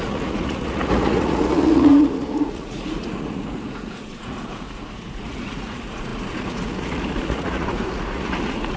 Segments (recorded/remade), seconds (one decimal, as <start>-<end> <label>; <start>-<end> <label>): 0.0-8.8 remade